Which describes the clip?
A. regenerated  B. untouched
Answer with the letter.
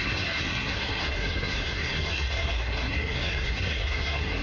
A